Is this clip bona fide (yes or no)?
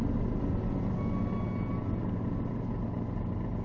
yes